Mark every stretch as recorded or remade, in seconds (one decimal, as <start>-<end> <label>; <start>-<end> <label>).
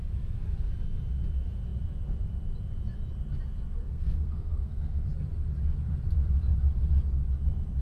0.0-3.8 recorded; 3.8-5.1 remade; 5.1-7.8 recorded